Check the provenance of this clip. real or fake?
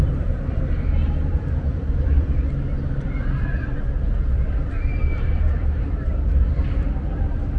fake